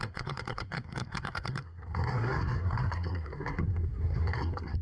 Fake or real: fake